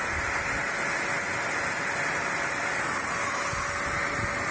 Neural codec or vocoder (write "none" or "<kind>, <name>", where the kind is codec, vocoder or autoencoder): none